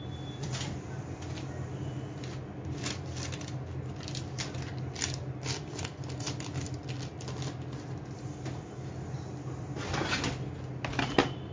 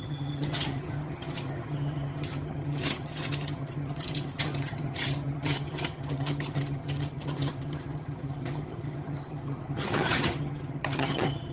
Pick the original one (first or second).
first